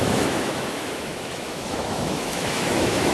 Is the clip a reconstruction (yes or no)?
yes